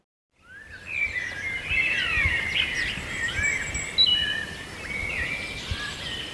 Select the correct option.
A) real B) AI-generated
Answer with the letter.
A